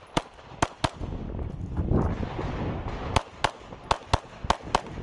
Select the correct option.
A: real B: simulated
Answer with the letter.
A